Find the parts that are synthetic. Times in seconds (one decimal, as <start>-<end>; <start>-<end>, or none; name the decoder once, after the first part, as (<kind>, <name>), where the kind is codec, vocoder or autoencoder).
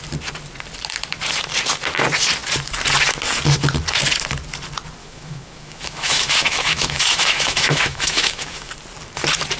5.0-8.7 (autoencoder, DAC-VAE)